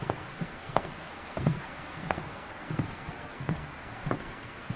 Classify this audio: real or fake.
fake